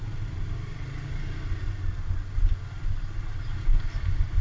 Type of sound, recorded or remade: recorded